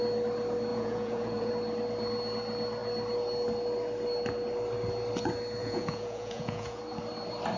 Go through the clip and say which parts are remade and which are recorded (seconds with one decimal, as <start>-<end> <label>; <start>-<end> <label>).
0.0-0.7 recorded; 0.7-1.5 remade; 1.5-5.6 recorded; 5.6-6.8 remade; 6.8-7.6 recorded